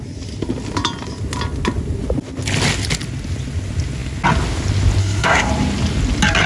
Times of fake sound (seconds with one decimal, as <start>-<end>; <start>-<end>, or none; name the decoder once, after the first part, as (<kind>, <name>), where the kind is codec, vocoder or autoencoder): 5.0-5.5 (codec, SNAC)